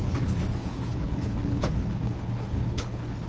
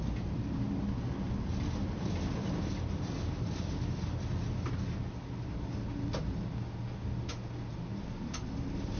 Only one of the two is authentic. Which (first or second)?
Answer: second